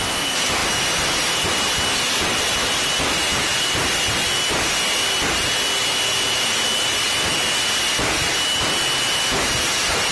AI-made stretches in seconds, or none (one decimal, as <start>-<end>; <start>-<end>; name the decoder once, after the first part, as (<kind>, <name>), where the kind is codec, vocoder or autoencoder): none